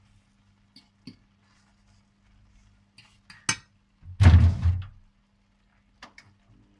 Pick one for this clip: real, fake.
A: real